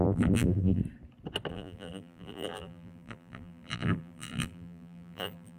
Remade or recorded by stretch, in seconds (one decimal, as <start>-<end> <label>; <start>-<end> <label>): 0.0-0.8 remade; 0.8-1.5 recorded; 1.5-5.6 remade